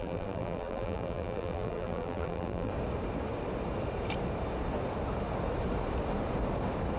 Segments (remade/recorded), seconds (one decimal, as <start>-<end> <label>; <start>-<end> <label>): 0.0-2.7 remade; 2.7-7.0 recorded